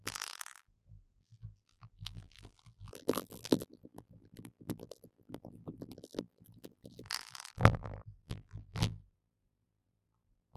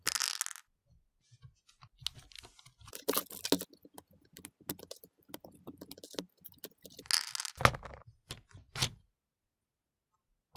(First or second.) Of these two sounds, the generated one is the first